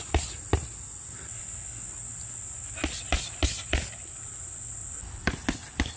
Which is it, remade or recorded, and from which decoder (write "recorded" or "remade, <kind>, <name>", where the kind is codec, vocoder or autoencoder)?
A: recorded